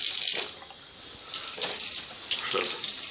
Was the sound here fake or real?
real